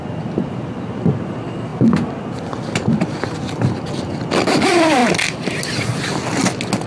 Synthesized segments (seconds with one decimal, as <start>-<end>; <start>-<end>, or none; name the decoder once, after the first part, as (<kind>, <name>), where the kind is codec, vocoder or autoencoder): none